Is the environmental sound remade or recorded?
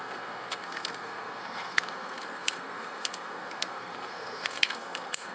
remade